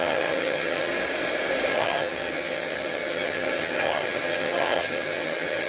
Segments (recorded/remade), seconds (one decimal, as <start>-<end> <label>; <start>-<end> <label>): 0.0-0.9 remade; 0.9-1.7 recorded; 1.7-5.7 remade